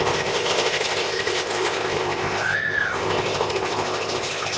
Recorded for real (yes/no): no